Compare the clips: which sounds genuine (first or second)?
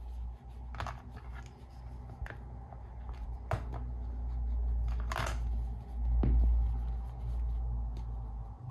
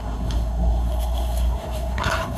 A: first